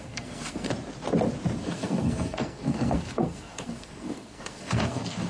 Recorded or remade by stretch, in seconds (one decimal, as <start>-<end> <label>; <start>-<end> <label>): 0.0-0.7 remade; 0.7-1.6 recorded; 1.6-5.3 remade